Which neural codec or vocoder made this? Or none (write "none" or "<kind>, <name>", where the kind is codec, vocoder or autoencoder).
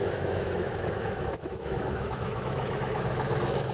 autoencoder, DAC-VAE